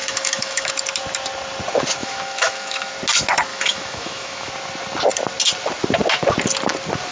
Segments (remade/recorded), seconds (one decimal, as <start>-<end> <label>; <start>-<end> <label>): 0.0-0.7 remade; 0.7-2.0 recorded; 2.0-2.9 remade; 2.9-3.5 recorded; 3.5-4.5 remade; 4.5-7.1 recorded